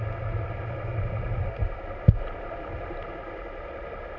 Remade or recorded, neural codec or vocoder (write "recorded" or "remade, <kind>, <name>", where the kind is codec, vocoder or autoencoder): recorded